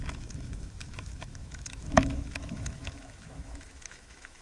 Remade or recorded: remade